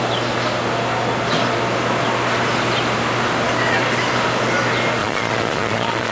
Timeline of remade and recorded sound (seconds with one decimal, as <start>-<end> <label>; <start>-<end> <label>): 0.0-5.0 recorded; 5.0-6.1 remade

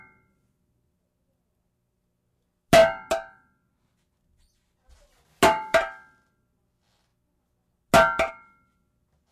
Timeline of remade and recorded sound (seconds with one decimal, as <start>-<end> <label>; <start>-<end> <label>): 0.0-9.3 recorded

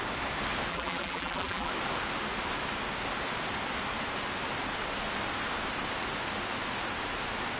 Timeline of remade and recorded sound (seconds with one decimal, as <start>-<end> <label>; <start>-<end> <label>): 0.0-0.7 recorded; 0.7-1.7 remade; 1.7-7.6 recorded

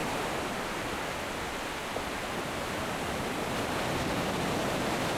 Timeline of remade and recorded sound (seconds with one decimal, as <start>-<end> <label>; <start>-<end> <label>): 0.0-5.2 recorded